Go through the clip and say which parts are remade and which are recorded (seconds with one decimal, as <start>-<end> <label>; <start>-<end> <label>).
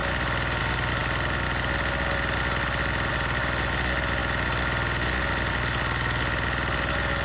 0.0-7.2 recorded